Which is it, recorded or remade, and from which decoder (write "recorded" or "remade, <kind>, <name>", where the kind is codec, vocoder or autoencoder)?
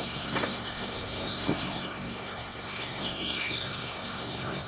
remade, codec, SNAC